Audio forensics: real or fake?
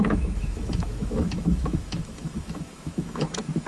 fake